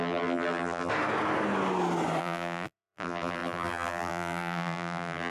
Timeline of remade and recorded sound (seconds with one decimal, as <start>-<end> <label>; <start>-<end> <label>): 0.0-0.9 remade; 0.9-2.2 recorded; 2.2-5.3 remade